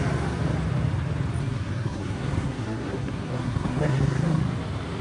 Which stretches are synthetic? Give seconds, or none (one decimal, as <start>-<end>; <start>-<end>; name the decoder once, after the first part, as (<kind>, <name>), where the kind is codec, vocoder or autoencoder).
1.4-4.4 (codec, SNAC)